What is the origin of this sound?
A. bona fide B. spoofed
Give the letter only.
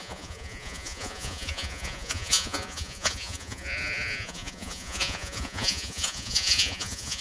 B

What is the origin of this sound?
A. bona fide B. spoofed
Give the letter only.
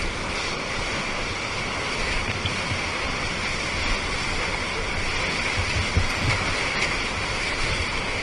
A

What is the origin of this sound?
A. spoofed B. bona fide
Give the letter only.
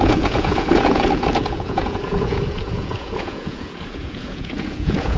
A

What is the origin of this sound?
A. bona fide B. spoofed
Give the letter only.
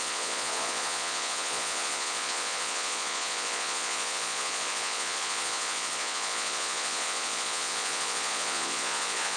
B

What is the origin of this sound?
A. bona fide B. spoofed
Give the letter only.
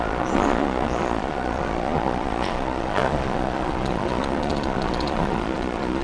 B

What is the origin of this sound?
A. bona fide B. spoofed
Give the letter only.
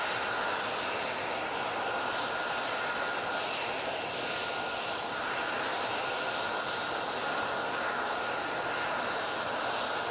A